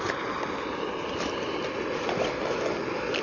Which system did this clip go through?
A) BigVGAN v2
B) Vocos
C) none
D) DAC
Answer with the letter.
C